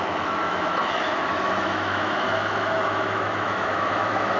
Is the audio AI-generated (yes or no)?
yes